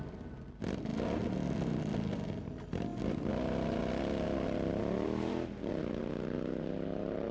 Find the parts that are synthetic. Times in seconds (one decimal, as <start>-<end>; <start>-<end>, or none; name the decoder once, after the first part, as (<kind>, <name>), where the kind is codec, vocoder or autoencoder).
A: none